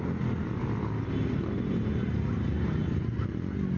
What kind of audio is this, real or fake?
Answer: real